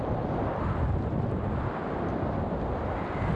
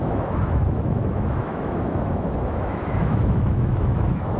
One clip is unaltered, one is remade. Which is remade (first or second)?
second